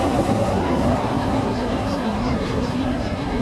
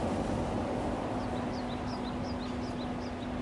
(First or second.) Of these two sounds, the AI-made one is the first